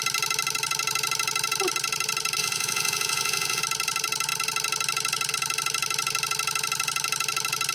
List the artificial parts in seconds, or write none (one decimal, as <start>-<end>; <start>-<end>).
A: 2.4-3.6